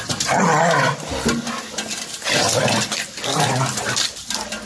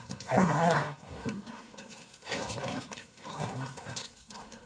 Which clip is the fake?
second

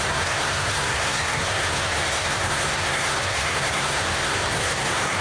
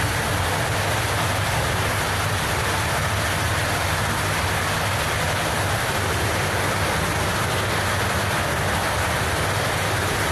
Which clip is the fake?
first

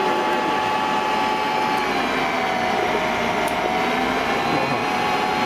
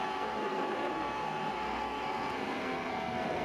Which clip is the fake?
second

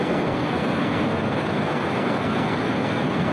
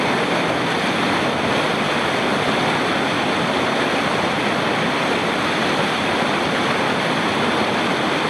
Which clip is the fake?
first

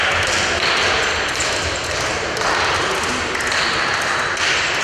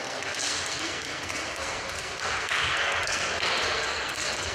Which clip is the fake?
second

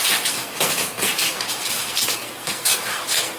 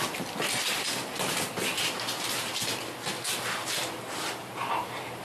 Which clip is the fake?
first